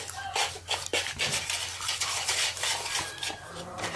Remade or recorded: recorded